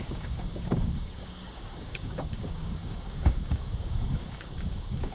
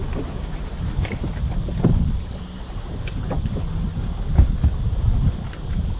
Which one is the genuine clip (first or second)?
second